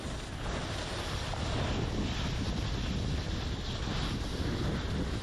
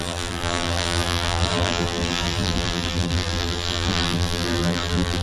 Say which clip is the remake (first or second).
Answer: second